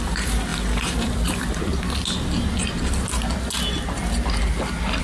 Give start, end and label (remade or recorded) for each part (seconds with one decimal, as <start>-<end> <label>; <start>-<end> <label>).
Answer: 0.0-1.7 remade; 1.7-5.0 recorded